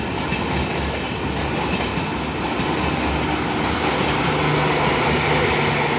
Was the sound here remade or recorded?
recorded